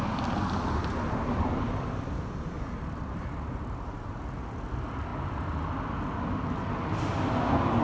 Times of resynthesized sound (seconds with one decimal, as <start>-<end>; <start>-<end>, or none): 1.3-4.2